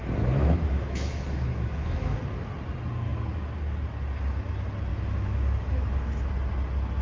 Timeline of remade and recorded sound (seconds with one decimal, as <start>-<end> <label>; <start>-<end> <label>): 0.0-2.2 remade; 2.2-4.9 recorded; 4.9-6.3 remade; 6.3-7.0 recorded

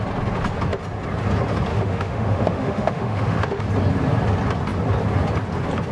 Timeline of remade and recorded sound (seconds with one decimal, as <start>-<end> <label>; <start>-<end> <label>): 0.0-1.7 recorded; 1.7-3.6 remade; 3.6-5.9 recorded

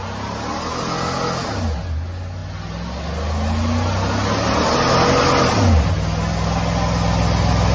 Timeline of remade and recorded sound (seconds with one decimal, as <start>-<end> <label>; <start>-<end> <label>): 0.0-7.7 recorded

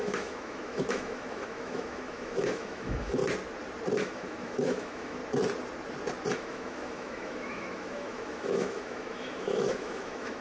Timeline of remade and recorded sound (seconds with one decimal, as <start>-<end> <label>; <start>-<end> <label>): 0.0-3.2 remade; 3.2-4.0 recorded; 4.0-5.2 remade; 5.2-6.3 recorded; 6.3-10.4 remade